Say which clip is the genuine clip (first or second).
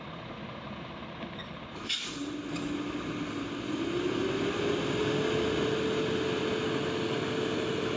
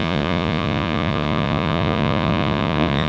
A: first